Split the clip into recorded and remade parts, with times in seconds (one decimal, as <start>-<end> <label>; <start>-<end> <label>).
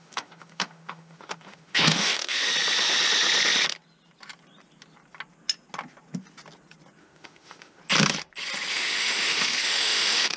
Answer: 0.0-2.5 remade; 2.5-7.0 recorded; 7.0-7.8 remade; 7.8-8.7 recorded; 8.7-10.4 remade